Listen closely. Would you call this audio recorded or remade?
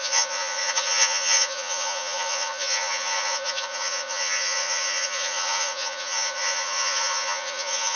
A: remade